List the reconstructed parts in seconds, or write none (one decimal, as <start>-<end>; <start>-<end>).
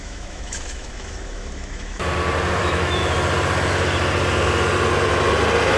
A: 0.0-2.0; 2.6-3.0